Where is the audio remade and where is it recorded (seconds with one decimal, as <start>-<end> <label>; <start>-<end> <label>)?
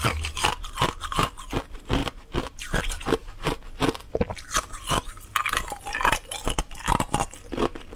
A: 0.0-2.0 recorded; 2.0-2.8 remade; 2.8-8.0 recorded